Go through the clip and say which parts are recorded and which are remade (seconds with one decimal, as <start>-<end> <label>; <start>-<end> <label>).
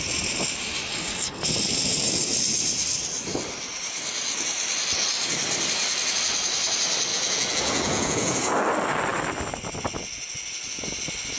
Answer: 0.0-7.1 recorded; 7.1-8.5 remade; 8.5-11.4 recorded